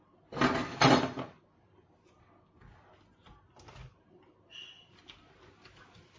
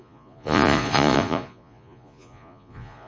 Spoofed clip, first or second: second